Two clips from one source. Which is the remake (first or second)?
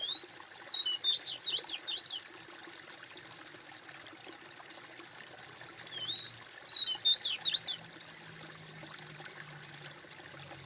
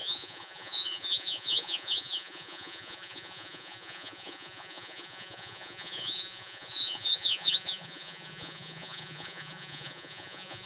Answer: second